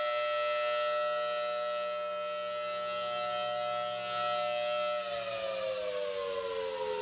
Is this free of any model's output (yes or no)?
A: yes